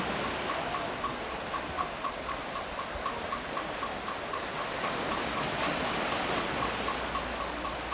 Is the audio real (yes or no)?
yes